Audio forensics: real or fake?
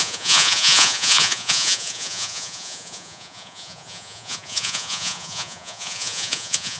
fake